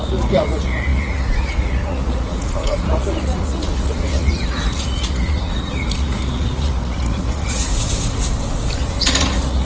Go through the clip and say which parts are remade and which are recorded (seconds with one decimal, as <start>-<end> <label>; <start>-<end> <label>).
0.0-7.7 remade; 7.7-8.8 recorded; 8.8-9.6 remade